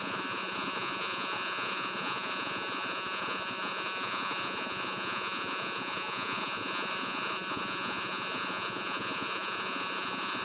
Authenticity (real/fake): fake